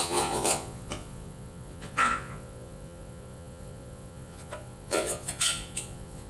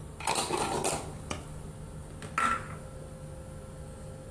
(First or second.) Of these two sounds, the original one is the second